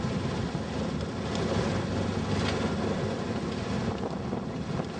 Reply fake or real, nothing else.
real